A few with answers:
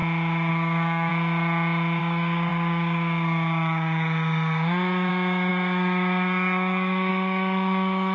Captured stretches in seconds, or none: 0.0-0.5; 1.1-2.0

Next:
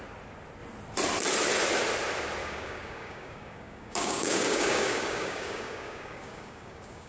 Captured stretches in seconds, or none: 0.0-2.4

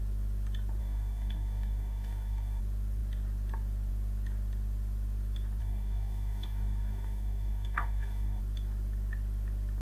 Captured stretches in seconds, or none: 0.0-0.8; 2.6-5.6; 8.4-9.8

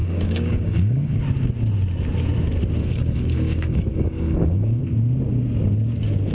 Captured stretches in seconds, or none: 1.1-2.8; 4.8-6.3

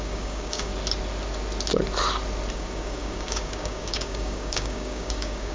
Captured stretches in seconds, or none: 0.7-2.5

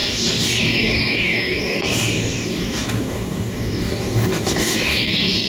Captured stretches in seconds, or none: none

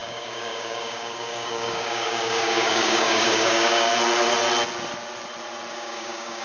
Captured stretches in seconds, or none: 3.9-5.7